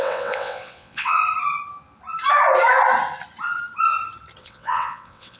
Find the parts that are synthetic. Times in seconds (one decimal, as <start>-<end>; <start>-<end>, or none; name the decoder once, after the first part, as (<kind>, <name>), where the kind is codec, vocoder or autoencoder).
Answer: 0.0-1.2 (vocoder, WaveNeXt); 4.4-5.4